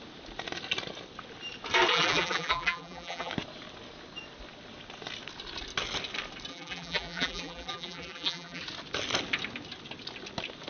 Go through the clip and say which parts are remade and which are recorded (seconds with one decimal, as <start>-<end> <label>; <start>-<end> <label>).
0.0-1.9 recorded; 1.9-3.3 remade; 3.3-6.5 recorded; 6.5-8.6 remade; 8.6-10.7 recorded